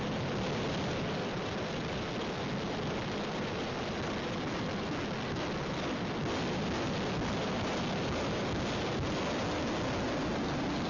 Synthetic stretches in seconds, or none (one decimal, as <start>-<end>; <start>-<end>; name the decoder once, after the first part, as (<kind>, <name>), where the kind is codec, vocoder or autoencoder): none